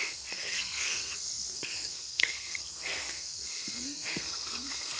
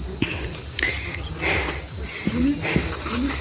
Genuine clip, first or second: second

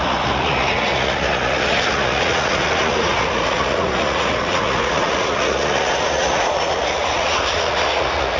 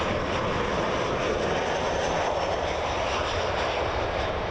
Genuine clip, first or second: second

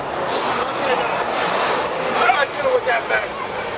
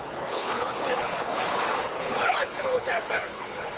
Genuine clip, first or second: first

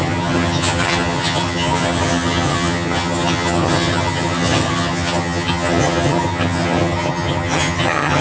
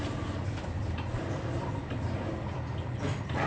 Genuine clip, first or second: second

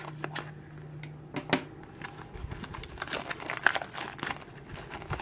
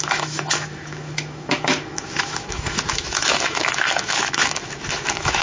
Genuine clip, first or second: first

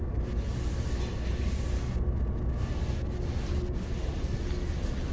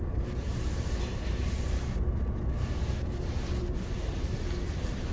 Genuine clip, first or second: first